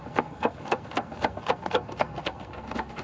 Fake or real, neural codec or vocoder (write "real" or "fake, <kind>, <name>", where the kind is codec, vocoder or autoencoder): fake, codec, SNAC